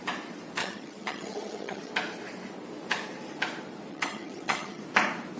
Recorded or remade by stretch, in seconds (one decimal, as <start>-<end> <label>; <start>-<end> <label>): 0.0-0.6 recorded; 0.6-1.9 remade; 1.9-3.9 recorded; 3.9-4.8 remade; 4.8-5.4 recorded